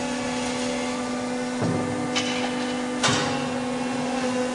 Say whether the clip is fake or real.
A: real